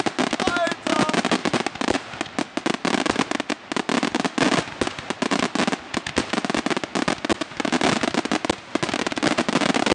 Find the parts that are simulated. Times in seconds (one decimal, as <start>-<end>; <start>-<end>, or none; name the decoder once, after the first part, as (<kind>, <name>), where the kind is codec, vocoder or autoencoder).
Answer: 1.4-2.2 (vocoder, BigVGAN v2)